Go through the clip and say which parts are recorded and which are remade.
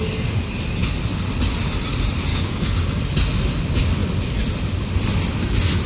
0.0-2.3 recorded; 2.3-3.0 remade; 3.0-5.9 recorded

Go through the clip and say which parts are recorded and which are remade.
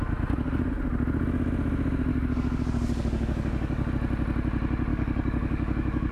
0.0-2.1 recorded; 2.1-3.9 remade; 3.9-4.9 recorded; 4.9-6.1 remade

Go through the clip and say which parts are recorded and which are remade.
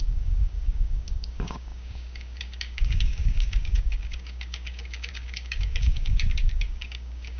0.0-7.4 remade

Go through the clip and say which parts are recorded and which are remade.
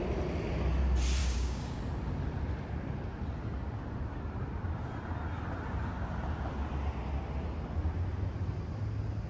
0.0-1.2 recorded; 1.2-1.8 remade; 1.8-9.3 recorded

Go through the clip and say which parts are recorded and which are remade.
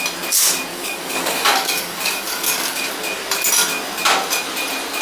0.0-0.7 recorded; 0.7-2.9 remade; 2.9-5.0 recorded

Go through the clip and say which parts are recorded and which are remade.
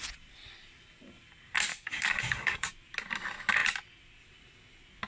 0.0-1.7 recorded; 1.7-2.7 remade; 2.7-5.1 recorded